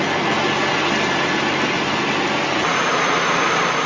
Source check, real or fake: real